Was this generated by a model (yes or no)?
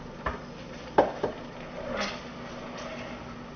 no